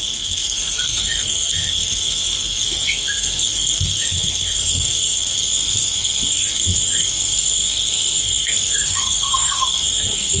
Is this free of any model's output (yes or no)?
no